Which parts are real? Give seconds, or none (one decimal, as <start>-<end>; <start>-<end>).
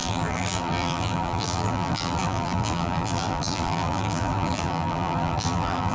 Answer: none